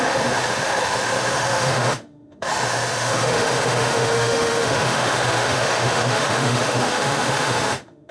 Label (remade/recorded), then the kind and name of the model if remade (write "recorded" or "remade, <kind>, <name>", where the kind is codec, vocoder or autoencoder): remade, autoencoder, DAC-VAE